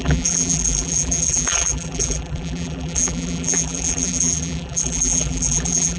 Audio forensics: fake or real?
fake